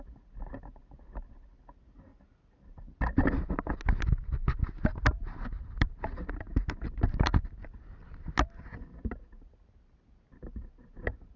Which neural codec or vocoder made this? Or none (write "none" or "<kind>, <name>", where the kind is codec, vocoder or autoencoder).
none